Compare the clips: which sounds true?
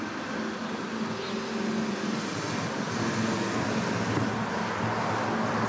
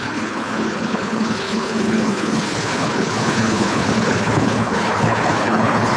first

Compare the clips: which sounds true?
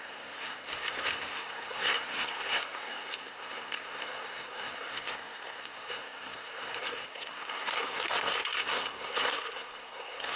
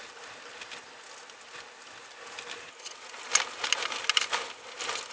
second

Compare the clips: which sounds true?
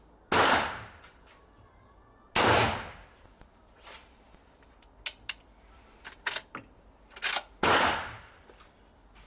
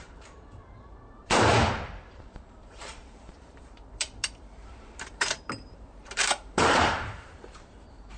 first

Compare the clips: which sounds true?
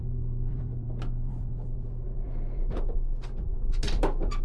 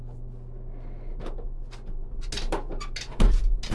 second